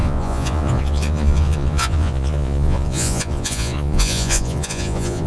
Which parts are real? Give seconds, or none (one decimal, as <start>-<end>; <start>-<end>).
none